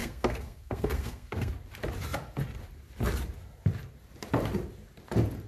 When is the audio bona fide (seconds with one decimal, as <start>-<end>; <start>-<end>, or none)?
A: 1.5-5.5